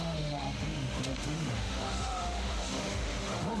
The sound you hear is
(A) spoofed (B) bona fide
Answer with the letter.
A